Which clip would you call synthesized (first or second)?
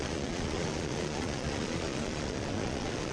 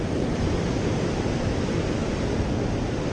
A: first